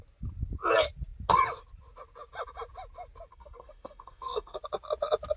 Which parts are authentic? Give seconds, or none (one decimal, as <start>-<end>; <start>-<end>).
0.0-3.3; 4.6-5.4